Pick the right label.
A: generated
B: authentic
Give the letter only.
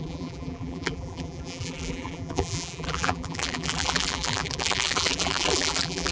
A